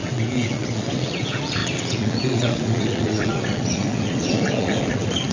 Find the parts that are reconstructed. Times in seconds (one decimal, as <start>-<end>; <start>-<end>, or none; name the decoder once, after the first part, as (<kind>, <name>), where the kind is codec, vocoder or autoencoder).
0.0-5.3 (vocoder, WaveNeXt)